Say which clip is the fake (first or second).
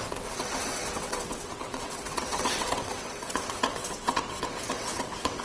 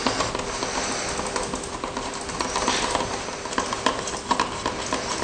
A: first